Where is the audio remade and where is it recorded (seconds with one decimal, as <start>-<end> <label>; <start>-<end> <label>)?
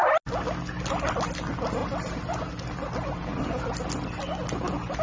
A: 0.0-5.0 recorded